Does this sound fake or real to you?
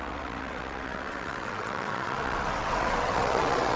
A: fake